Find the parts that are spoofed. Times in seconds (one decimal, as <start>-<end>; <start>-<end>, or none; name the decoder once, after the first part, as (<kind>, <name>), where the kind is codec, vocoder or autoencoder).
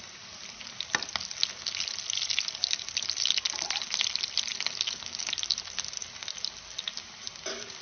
none